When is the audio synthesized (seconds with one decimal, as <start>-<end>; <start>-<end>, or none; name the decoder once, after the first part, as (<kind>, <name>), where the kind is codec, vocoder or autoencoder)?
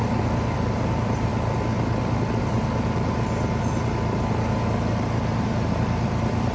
0.0-1.3 (vocoder, BigVGAN v2); 2.4-6.5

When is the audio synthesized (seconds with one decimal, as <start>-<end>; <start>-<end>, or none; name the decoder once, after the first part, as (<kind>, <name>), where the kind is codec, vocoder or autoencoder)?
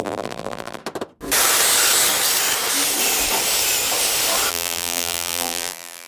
0.0-0.8 (vocoder, BigVGAN v2); 4.5-6.1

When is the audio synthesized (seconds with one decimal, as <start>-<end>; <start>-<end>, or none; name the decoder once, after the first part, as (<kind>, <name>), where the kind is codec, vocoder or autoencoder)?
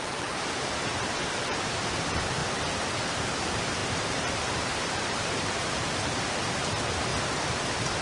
0.0-2.4 (vocoder, BigVGAN v2); 3.1-7.1; 7.6-8.0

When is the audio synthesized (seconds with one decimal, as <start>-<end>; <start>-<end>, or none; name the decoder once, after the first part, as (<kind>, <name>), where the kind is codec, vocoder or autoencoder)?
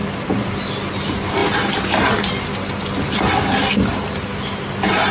none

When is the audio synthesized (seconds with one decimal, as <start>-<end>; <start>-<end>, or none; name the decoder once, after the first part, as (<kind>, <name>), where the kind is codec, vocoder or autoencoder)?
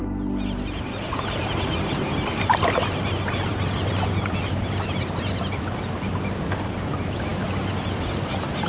0.0-5.7 (vocoder, BigVGAN v2); 6.2-7.3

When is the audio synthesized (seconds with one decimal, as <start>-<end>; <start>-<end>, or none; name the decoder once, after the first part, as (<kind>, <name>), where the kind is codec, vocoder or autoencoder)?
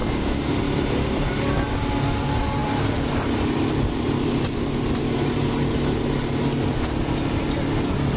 0.0-1.1 (vocoder, BigVGAN v2)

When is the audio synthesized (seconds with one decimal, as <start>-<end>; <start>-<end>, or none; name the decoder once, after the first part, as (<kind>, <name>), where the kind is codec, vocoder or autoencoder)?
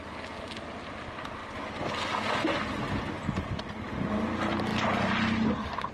none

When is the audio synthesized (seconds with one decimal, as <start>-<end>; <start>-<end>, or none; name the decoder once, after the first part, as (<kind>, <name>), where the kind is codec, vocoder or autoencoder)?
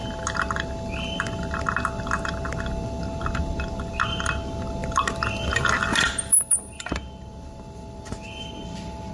4.8-9.1 (vocoder, BigVGAN v2)